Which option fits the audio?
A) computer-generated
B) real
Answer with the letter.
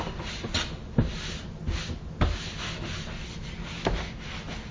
B